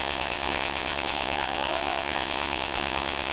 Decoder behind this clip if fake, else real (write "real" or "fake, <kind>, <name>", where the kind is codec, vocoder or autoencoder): fake, vocoder, WaveNeXt